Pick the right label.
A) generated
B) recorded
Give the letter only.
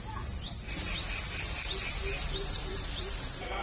B